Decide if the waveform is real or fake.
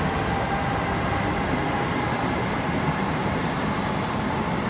real